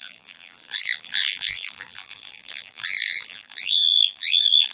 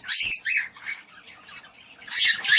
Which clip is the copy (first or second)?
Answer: first